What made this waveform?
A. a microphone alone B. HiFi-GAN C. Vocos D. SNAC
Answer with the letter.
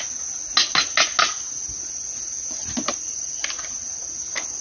A